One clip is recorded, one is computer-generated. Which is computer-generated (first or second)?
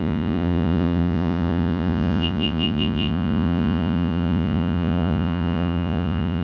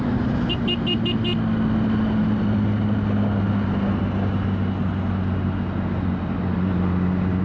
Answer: first